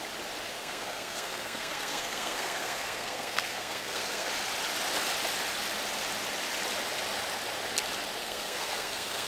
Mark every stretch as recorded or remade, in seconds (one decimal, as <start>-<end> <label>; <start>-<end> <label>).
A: 0.0-0.5 recorded; 0.5-4.3 remade; 4.3-8.2 recorded; 8.2-9.3 remade